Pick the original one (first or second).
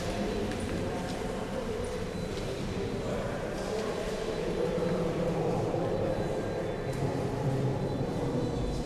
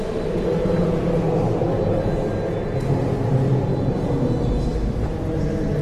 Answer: second